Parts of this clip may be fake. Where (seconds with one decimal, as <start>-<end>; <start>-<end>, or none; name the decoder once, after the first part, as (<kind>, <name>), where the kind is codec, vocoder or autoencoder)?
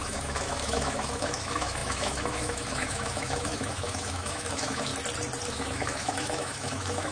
0.0-4.9 (autoencoder, DAC-VAE); 5.5-7.1